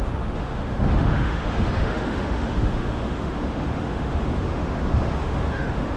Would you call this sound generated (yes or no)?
yes